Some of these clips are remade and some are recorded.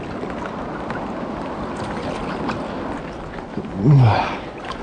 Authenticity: recorded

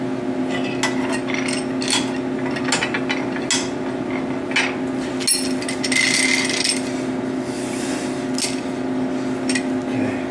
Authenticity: recorded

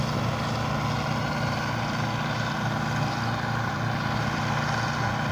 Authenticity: recorded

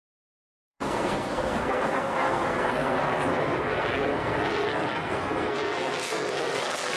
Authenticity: remade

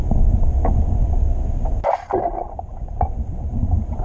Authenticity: recorded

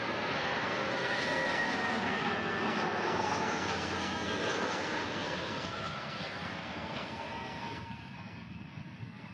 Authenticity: remade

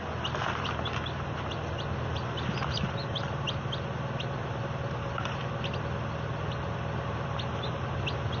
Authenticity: recorded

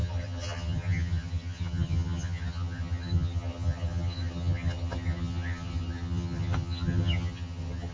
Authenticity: remade